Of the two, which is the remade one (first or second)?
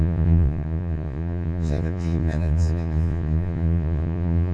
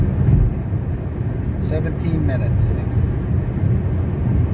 first